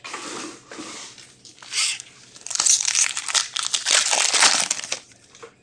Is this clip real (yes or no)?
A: yes